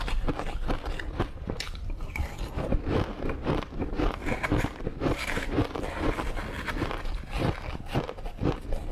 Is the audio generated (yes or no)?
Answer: no